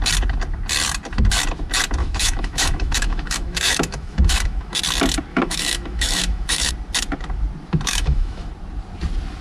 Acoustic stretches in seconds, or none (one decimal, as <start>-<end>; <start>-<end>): 0.0-2.0; 4.8-5.3; 6.7-7.9; 8.5-9.4